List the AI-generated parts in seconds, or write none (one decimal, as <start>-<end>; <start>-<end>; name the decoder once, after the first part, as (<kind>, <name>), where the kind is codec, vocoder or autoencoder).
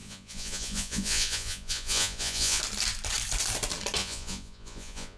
0.0-2.6 (vocoder, Vocos); 4.0-5.2